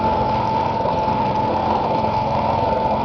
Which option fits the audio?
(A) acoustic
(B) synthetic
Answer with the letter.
B